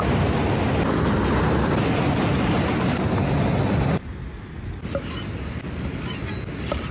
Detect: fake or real real